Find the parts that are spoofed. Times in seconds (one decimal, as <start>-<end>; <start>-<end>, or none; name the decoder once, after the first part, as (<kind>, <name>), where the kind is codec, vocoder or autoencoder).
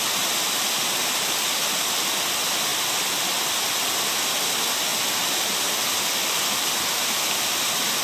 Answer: none